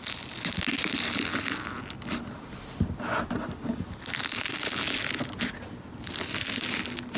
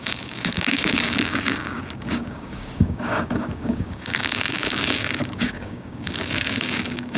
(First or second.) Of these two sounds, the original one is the first